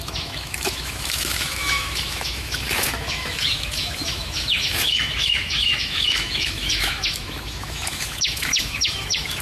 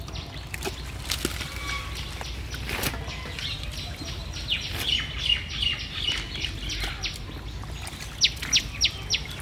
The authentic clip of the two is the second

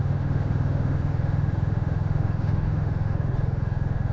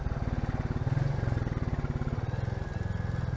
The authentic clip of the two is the second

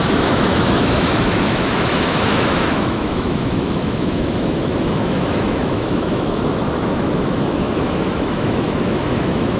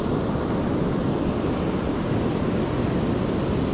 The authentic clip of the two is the second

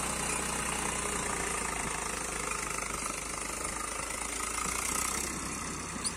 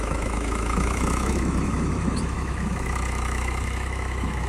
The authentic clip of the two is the first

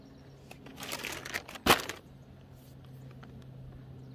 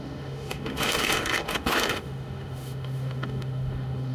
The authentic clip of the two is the first